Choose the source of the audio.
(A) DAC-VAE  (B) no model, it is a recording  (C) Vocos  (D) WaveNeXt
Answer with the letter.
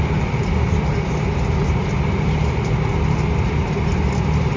B